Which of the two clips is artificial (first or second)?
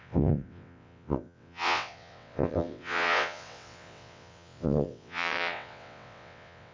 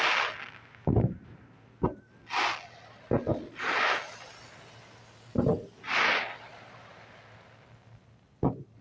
first